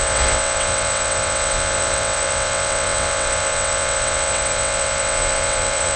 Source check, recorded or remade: remade